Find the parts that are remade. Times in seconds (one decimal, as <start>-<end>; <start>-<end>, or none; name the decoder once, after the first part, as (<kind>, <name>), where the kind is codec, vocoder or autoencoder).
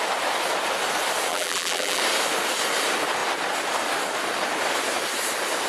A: 1.3-2.0 (vocoder, BigVGAN v2)